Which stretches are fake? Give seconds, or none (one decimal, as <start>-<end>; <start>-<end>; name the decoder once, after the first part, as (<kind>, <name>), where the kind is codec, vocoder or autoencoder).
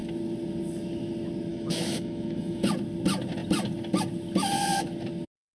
1.5-2.7 (autoencoder, DAC-VAE)